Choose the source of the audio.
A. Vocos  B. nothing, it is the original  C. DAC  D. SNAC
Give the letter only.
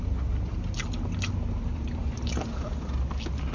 B